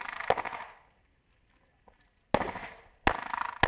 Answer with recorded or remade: recorded